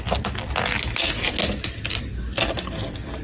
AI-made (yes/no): no